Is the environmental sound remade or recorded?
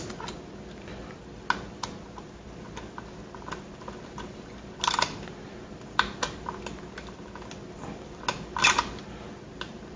recorded